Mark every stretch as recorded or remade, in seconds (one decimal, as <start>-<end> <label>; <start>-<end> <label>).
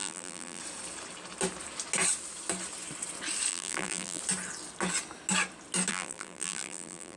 0.0-0.6 remade; 0.6-3.5 recorded; 3.5-4.2 remade; 4.2-5.9 recorded; 5.9-7.2 remade